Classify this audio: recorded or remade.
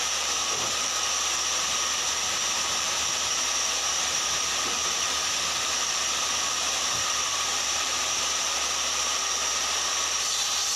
remade